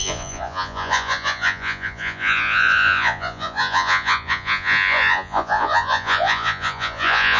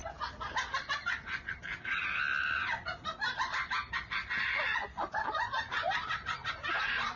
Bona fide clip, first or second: second